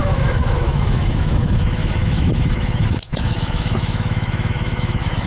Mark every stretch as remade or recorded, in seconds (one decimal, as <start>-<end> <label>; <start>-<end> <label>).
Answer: 0.0-5.3 remade